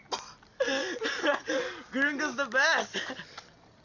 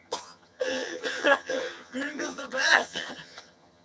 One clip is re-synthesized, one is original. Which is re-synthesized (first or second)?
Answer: second